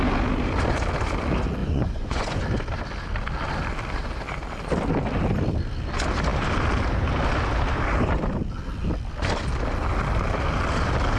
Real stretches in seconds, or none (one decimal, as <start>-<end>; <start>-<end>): 0.0-1.6; 2.4-11.2